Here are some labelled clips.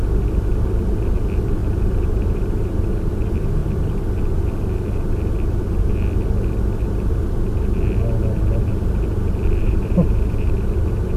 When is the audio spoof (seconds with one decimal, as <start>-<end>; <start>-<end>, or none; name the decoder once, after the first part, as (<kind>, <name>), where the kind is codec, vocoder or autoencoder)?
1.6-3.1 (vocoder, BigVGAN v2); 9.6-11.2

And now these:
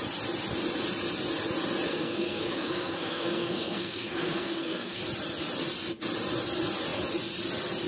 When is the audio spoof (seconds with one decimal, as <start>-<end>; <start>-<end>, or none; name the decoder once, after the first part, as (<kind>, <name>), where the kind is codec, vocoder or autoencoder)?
1.9-5.0 (codec, SNAC)

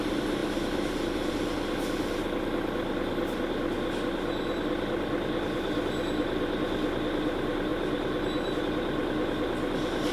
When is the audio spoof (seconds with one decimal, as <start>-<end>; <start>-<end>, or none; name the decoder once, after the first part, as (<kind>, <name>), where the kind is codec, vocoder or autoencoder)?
none

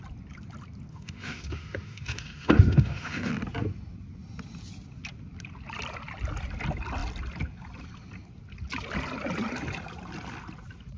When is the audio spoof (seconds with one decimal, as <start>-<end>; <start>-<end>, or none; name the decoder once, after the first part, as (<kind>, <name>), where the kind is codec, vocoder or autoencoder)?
0.9-3.3 (autoencoder, DAC-VAE)

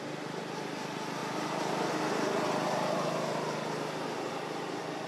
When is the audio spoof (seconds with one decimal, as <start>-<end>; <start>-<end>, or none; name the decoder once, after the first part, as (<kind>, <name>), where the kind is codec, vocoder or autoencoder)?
none

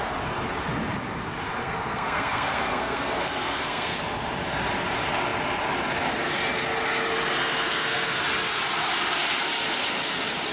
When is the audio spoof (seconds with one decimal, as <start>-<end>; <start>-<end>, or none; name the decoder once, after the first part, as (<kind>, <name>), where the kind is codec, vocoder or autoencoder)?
1.6-4.0 (codec, SNAC); 7.4-8.2

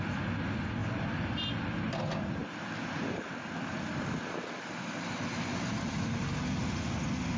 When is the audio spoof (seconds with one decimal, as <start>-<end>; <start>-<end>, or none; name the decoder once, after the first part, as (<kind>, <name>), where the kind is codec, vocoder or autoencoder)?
2.4-3.8 (vocoder, BigVGAN v2)